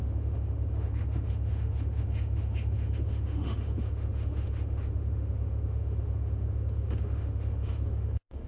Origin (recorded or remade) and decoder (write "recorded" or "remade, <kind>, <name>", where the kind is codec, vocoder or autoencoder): remade, autoencoder, DAC-VAE